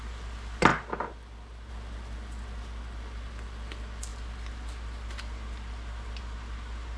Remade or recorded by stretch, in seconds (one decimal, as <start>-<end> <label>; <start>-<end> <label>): 0.0-7.0 recorded